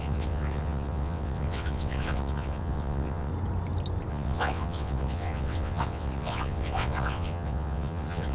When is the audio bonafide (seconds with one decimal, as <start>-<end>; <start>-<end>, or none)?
3.3-4.1